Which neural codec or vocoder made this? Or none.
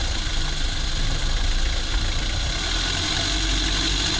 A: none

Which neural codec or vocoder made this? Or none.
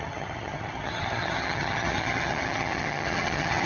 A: vocoder, HiFi-GAN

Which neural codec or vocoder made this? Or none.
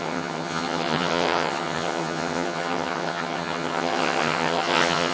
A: vocoder, HiFi-GAN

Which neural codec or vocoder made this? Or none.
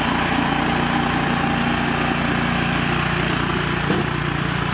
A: none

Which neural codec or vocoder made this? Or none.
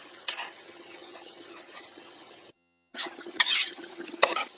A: vocoder, HiFi-GAN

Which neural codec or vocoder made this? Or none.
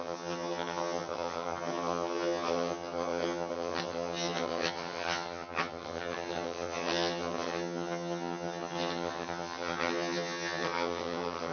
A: vocoder, HiFi-GAN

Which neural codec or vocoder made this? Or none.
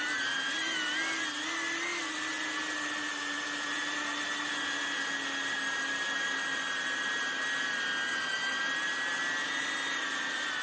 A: none